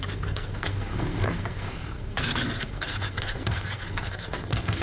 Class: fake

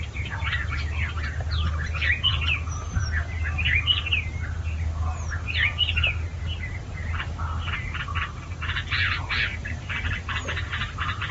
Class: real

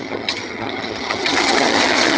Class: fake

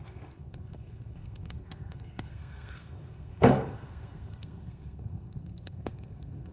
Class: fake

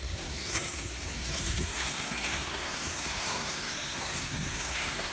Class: fake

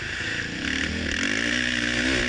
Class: real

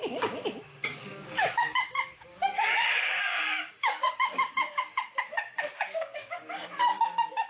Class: fake